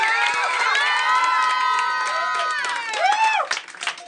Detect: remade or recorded recorded